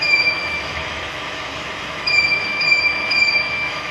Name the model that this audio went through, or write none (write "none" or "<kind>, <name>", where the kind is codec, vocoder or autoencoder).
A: autoencoder, DAC-VAE